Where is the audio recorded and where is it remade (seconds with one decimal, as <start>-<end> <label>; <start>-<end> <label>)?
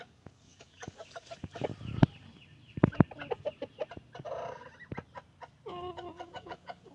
0.0-1.7 remade; 1.7-5.7 recorded; 5.7-6.9 remade